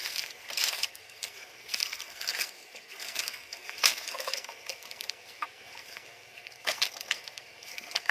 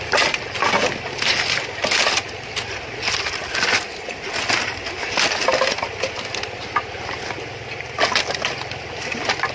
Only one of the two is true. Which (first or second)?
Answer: second